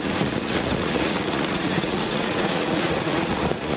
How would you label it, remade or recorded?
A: remade